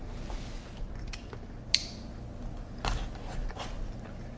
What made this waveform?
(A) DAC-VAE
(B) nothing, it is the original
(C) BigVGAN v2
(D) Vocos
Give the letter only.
B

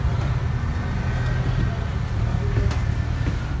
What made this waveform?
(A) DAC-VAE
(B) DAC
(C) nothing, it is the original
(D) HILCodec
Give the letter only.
C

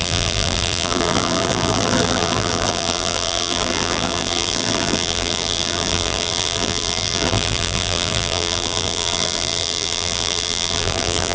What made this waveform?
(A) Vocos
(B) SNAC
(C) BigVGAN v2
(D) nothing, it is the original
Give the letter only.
C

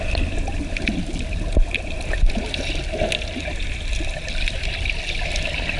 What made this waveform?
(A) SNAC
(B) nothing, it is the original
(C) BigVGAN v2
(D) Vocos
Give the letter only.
B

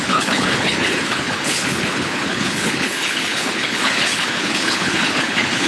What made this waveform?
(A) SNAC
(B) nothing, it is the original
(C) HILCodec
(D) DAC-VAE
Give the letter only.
C